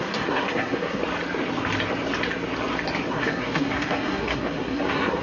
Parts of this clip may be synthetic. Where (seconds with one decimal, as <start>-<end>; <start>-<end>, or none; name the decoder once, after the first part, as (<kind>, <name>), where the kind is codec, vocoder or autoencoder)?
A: 0.0-1.0 (codec, SNAC); 3.1-5.2